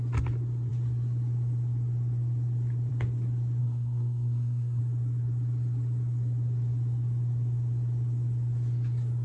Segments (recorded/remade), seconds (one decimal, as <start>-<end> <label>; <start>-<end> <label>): 0.0-3.6 recorded; 3.6-4.8 remade; 4.8-9.2 recorded